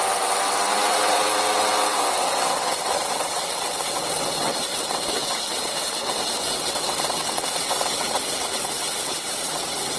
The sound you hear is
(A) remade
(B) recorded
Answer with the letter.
A